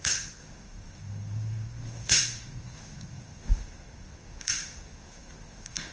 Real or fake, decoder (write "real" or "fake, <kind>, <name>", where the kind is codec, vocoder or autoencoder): fake, codec, SNAC